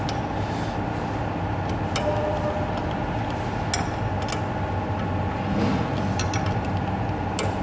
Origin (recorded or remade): recorded